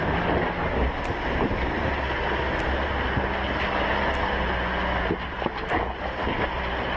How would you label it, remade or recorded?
recorded